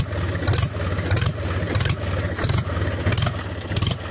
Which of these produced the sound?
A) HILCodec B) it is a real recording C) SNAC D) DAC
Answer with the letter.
B